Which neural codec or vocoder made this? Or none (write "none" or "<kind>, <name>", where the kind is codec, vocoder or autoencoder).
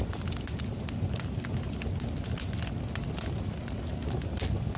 none